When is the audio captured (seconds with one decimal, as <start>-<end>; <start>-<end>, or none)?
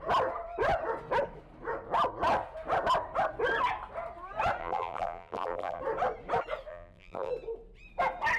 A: 0.0-4.6; 5.8-6.7; 7.3-8.4